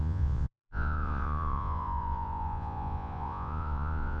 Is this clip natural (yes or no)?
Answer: no